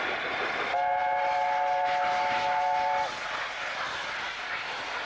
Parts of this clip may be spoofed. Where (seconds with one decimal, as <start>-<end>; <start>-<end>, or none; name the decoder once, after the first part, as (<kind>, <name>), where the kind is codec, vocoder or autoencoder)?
none